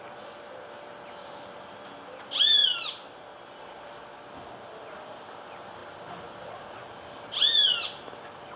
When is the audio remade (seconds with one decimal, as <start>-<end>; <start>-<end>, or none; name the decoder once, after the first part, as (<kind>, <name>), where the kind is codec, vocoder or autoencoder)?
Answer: none